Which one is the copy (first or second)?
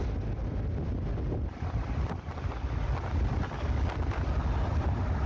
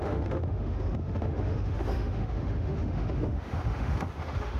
second